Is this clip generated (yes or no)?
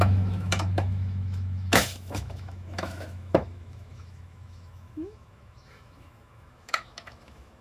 yes